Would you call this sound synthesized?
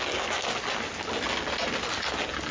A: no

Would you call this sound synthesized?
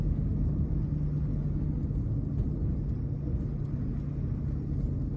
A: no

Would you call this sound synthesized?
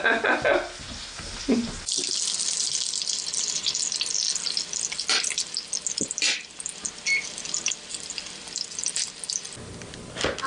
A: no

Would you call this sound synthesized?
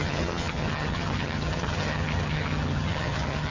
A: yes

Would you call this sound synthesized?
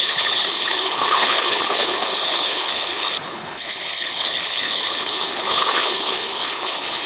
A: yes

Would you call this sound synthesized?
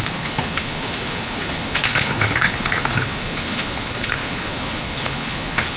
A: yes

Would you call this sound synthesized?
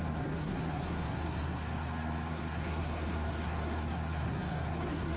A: yes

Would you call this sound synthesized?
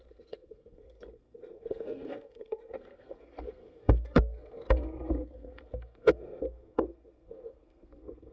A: yes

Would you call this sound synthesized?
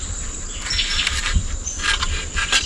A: no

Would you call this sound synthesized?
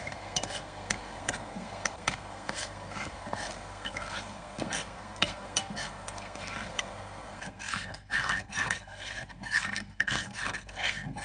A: yes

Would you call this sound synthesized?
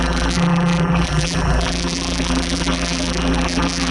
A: yes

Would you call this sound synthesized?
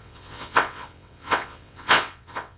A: yes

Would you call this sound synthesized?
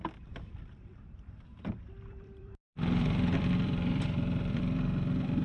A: yes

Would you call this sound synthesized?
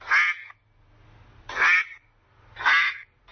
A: no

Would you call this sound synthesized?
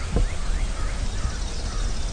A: no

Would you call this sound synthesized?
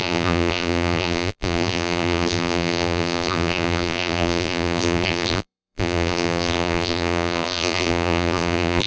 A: yes